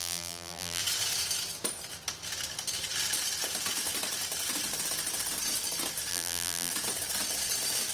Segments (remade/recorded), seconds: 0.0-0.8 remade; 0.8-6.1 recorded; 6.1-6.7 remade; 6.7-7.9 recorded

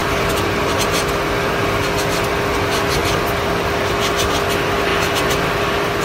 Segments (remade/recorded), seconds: 0.0-6.0 recorded

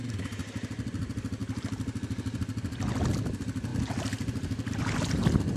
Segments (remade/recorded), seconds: 0.0-5.6 recorded

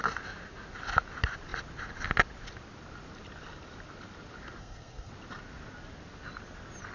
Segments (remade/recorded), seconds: 0.0-4.6 recorded; 4.6-5.1 remade; 5.1-6.9 recorded

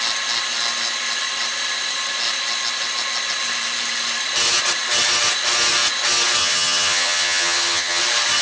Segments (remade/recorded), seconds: 0.0-6.4 recorded; 6.4-8.0 remade; 8.0-8.4 recorded